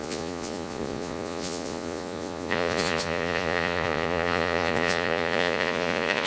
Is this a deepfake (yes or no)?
yes